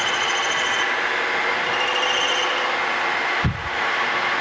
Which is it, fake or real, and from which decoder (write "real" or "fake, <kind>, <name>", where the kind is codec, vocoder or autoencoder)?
real